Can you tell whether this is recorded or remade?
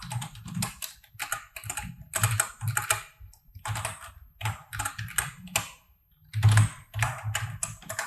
recorded